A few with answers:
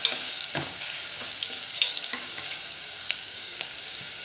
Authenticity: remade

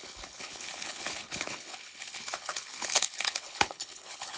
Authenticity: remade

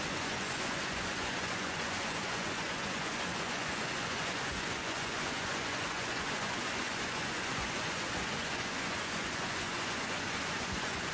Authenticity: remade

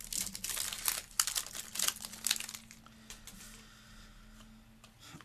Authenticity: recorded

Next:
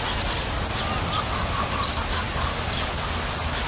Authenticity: recorded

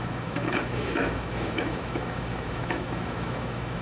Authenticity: remade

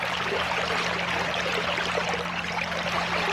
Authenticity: recorded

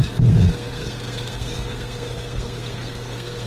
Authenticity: remade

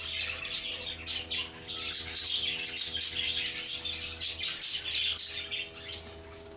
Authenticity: recorded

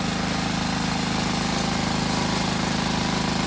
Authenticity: recorded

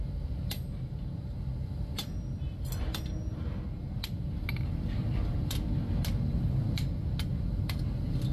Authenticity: recorded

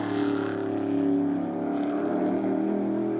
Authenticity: recorded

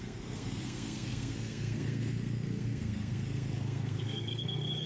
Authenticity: remade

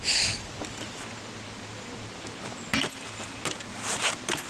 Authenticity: recorded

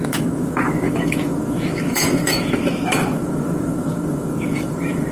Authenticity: remade